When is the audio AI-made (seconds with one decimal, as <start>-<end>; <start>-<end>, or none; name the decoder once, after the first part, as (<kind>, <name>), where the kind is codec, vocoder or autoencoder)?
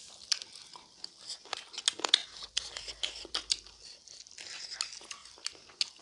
none